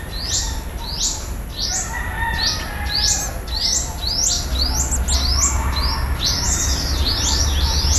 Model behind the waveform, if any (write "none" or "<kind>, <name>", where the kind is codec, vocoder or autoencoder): none